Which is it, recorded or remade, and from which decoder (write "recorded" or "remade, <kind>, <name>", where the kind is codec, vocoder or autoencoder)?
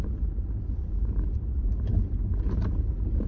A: recorded